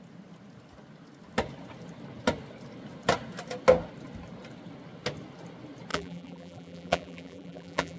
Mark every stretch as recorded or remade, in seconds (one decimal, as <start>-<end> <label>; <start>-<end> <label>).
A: 0.0-5.9 recorded; 5.9-8.0 remade